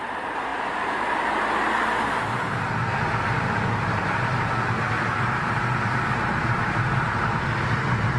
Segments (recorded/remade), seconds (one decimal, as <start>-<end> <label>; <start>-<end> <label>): 0.0-8.2 recorded